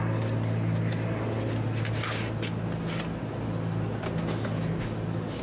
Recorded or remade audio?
recorded